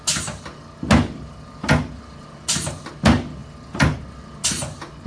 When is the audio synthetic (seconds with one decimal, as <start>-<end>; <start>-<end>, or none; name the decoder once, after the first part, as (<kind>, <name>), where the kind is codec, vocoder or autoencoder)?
none

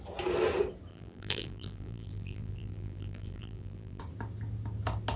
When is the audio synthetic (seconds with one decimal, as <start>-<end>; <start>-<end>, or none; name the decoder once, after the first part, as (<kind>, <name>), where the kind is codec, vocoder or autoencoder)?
0.9-4.0 (vocoder, BigVGAN v2)